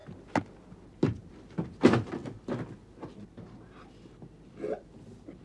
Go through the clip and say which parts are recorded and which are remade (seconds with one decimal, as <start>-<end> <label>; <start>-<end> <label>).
0.0-5.4 recorded